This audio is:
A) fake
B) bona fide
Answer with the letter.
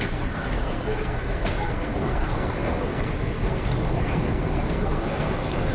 A